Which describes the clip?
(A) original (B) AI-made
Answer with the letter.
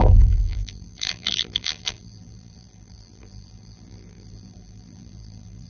B